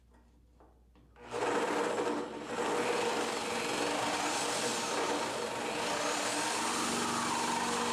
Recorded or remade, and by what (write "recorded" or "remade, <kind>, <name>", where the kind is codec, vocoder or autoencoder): recorded